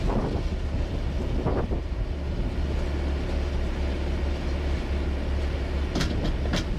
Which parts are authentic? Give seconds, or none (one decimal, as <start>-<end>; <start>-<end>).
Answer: 0.0-6.8